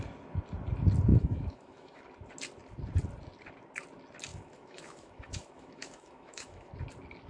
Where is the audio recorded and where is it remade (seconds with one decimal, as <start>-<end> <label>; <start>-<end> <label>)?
0.0-1.1 recorded; 1.1-2.0 remade; 2.0-4.3 recorded; 4.3-6.7 remade; 6.7-7.3 recorded